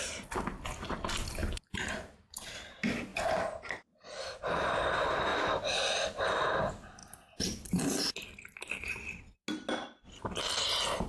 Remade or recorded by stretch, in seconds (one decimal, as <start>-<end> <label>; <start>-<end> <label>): 0.0-1.4 recorded; 1.4-2.5 remade; 2.5-5.3 recorded; 5.3-6.3 remade; 6.3-7.0 recorded; 7.0-7.9 remade; 7.9-11.1 recorded